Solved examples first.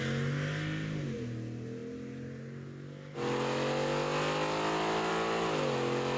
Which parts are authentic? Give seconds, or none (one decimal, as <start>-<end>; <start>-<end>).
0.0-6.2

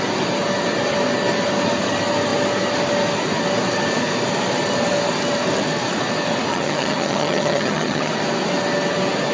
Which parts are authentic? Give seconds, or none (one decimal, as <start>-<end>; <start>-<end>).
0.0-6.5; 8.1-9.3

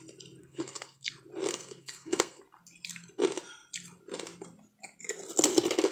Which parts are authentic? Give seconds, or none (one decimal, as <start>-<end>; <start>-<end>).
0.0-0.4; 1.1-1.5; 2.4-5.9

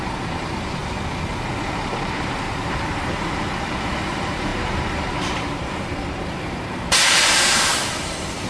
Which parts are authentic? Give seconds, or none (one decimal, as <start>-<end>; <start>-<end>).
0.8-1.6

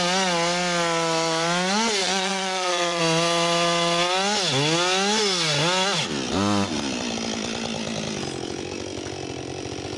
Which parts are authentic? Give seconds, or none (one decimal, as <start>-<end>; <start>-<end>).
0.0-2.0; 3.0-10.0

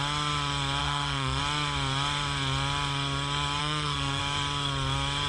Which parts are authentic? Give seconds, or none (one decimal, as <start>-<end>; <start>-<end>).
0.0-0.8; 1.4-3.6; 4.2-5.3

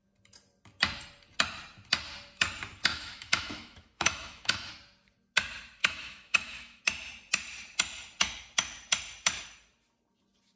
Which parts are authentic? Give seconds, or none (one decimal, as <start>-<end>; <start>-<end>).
0.0-2.9; 4.7-5.8; 6.8-10.6

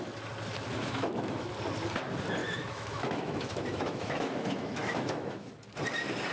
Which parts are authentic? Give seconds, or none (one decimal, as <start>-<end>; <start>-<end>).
0.0-0.8; 1.5-2.4; 5.5-6.3